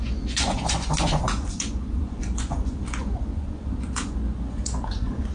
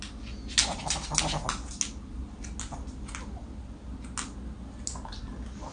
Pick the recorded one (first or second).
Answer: second